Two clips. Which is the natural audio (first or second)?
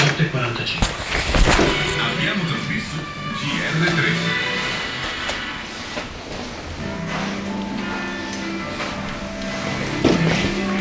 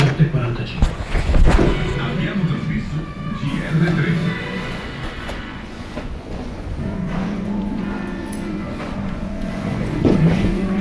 first